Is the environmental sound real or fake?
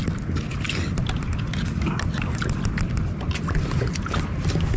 real